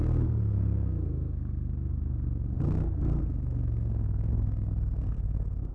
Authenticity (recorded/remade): remade